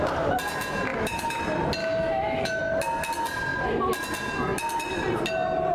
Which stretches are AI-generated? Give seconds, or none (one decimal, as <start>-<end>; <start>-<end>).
0.9-1.4; 1.8-2.6